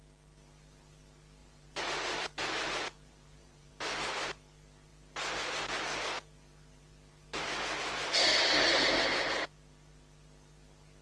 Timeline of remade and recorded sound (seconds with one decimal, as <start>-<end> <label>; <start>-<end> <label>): 0.0-1.4 recorded; 1.4-3.7 remade; 3.7-11.0 recorded